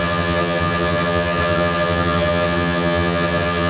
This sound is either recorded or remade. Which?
remade